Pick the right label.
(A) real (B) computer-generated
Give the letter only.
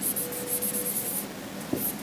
A